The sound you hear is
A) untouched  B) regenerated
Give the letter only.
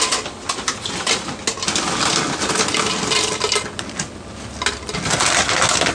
A